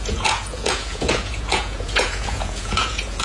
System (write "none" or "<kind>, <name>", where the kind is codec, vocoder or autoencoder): vocoder, Vocos